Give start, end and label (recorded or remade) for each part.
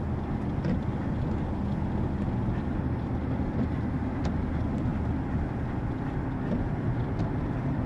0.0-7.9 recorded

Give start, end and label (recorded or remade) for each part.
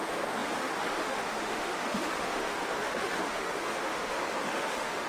0.0-5.1 remade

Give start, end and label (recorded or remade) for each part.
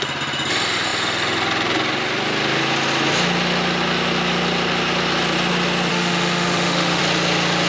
0.0-5.9 recorded; 5.9-7.0 remade; 7.0-7.7 recorded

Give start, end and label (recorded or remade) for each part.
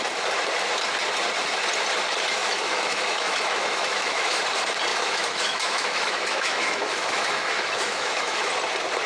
0.0-2.4 recorded; 2.4-4.4 remade; 4.4-4.9 recorded; 4.9-8.5 remade; 8.5-9.1 recorded